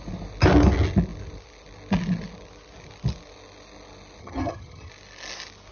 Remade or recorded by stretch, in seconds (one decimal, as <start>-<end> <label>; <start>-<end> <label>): 0.0-4.2 recorded; 4.2-4.9 remade; 4.9-5.7 recorded